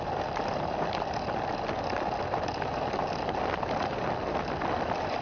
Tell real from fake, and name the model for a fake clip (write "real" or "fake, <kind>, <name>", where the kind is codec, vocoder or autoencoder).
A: real